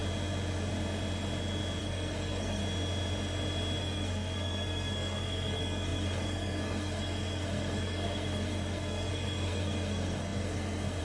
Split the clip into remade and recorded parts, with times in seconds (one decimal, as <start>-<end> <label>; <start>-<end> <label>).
0.0-1.8 recorded; 1.8-2.6 remade; 2.6-3.8 recorded; 3.8-11.0 remade